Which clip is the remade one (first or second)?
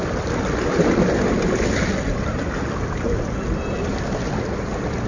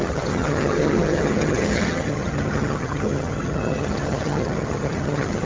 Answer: second